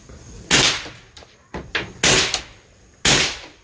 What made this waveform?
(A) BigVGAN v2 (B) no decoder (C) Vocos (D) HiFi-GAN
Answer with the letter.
B